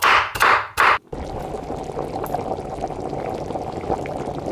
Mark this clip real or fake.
real